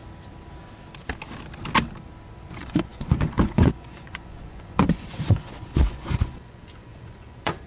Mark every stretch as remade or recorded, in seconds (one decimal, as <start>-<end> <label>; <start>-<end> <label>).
0.0-2.5 recorded; 2.5-7.7 remade